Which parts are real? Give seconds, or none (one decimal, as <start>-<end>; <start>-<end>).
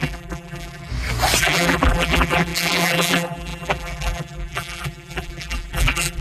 0.9-1.4